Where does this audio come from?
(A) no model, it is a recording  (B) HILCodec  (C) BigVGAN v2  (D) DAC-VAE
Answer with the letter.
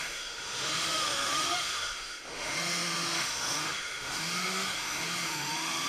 D